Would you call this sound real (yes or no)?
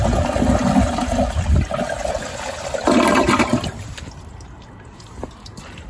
yes